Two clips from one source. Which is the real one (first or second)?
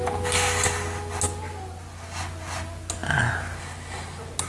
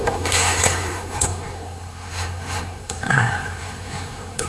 first